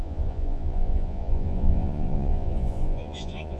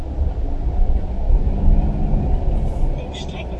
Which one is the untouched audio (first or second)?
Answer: second